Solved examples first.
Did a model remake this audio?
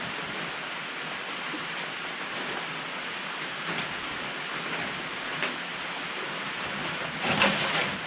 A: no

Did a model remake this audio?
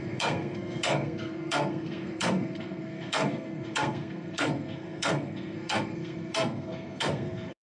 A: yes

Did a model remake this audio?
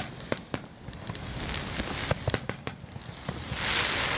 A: no